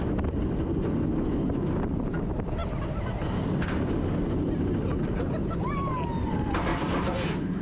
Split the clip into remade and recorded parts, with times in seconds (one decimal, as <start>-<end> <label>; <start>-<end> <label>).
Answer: 0.0-7.6 recorded